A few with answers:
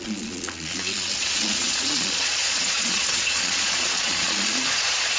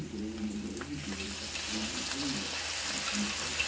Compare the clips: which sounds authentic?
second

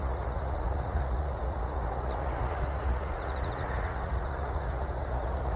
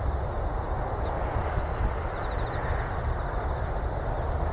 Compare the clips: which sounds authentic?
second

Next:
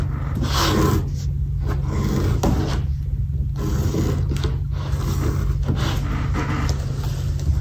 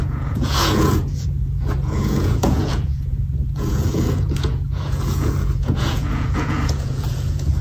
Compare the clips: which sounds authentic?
first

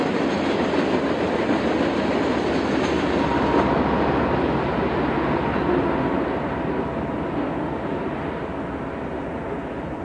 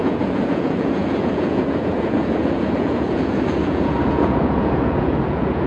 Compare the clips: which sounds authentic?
first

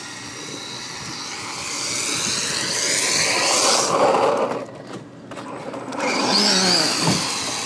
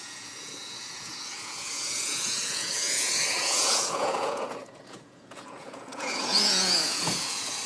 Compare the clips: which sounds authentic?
first